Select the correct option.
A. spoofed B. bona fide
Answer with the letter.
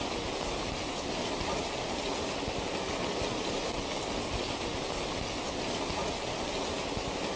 B